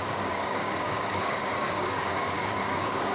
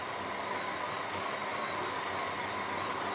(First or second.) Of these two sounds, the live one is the second